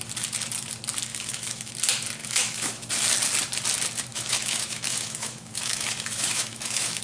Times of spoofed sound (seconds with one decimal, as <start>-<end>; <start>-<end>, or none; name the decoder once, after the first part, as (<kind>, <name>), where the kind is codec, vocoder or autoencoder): 1.1-1.7 (autoencoder, DAC-VAE); 2.2-2.9; 4.1-7.0